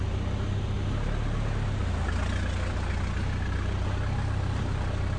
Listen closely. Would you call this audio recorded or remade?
recorded